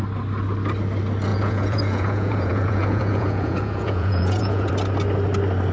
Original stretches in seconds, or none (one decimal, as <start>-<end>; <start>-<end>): 0.0-1.3; 4.7-5.7